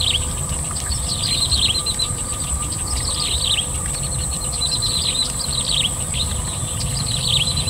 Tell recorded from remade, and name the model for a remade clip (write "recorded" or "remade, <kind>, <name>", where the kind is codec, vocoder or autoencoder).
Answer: remade, vocoder, BigVGAN v2